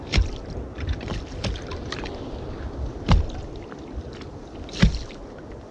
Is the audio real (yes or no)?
yes